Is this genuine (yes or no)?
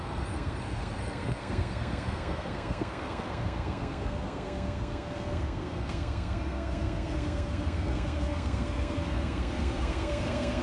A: no